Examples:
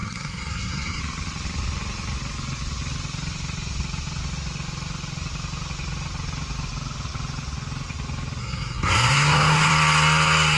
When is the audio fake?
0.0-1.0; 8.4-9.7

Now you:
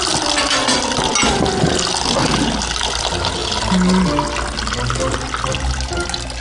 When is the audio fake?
none

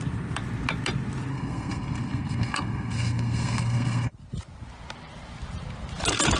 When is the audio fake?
1.3-4.1